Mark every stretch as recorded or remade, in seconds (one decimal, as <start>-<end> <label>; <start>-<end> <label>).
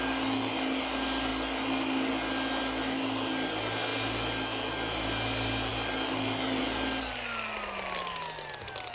0.0-8.9 recorded